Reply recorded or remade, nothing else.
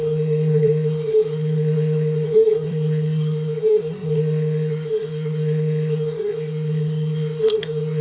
remade